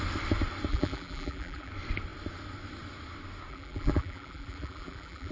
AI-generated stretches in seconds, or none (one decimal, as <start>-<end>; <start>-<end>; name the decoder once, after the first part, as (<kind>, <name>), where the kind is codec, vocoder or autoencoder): 0.7-1.7 (vocoder, BigVGAN v2); 3.5-5.3